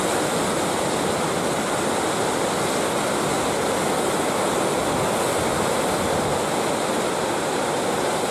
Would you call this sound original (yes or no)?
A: yes